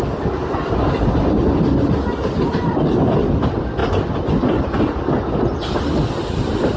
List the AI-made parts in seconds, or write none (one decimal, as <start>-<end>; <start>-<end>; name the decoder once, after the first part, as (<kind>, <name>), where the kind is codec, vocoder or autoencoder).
none